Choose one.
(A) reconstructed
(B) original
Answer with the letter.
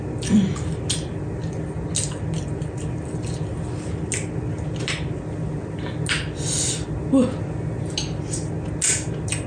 B